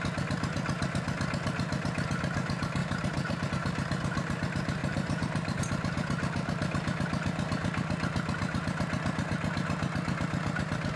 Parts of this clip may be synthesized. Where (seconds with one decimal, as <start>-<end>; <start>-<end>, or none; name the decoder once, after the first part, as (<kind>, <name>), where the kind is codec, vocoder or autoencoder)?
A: 2.8-3.5 (vocoder, BigVGAN v2); 4.8-5.6